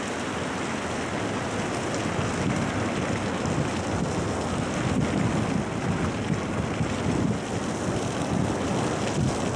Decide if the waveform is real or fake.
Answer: real